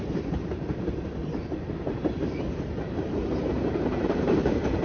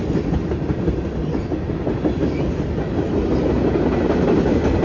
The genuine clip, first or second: second